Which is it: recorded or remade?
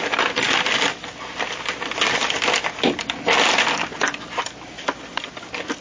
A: recorded